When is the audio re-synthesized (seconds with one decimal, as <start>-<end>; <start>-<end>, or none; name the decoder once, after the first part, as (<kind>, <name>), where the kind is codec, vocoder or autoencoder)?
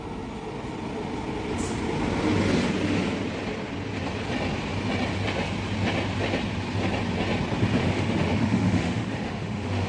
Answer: 7.8-9.9 (autoencoder, DAC-VAE)